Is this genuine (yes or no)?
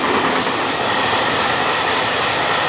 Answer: no